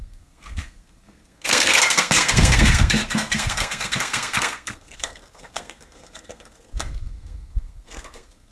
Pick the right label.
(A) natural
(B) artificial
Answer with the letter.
B